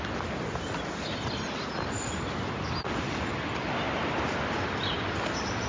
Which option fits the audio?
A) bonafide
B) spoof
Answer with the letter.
A